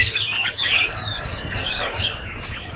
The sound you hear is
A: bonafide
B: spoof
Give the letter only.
B